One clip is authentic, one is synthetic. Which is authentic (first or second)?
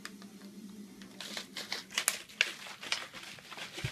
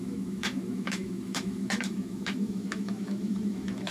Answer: first